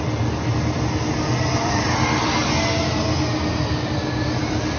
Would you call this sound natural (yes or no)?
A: no